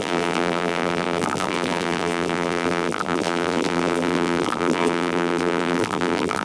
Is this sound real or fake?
fake